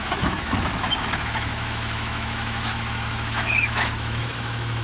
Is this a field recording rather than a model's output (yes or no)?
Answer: no